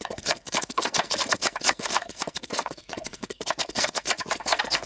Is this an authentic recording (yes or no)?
no